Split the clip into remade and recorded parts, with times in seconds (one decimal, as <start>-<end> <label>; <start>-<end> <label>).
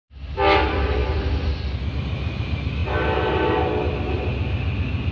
0.0-5.1 recorded